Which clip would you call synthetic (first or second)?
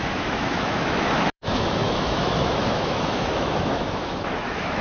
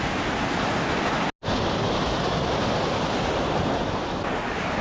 first